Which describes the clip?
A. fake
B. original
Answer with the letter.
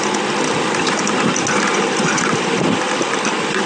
B